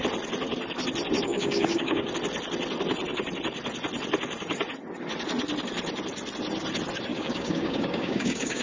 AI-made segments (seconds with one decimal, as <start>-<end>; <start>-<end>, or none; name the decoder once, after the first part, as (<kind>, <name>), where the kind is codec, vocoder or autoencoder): 1.3-2.1 (codec, DAC); 7.1-8.6